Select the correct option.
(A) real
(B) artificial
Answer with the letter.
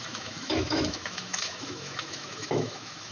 B